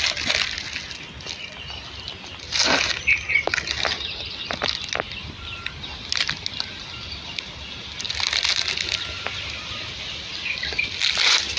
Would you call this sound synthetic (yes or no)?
no